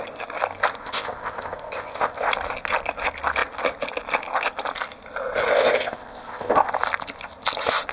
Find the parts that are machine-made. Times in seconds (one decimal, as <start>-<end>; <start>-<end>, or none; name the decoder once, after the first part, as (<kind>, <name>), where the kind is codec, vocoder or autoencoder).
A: 0.8-2.3 (codec, ZipCodec); 5.5-6.7